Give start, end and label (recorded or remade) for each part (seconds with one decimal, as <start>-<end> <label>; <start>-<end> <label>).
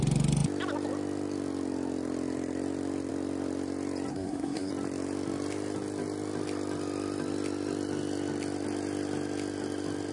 0.0-4.1 recorded; 4.1-4.7 remade; 4.7-10.1 recorded